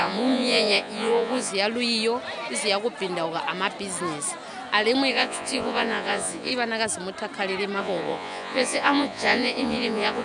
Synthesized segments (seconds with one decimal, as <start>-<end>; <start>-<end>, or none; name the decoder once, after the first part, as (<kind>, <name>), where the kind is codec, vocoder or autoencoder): 0.0-1.5 (vocoder, Vocos); 5.1-6.5; 7.8-10.2